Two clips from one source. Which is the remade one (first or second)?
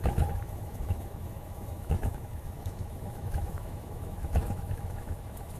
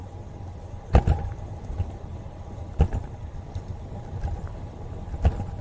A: first